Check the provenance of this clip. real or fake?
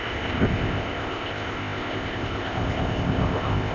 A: fake